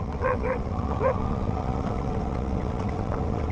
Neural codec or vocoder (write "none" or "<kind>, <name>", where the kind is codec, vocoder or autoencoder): vocoder, WaveNeXt